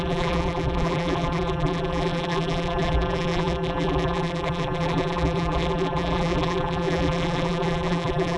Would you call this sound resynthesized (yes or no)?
yes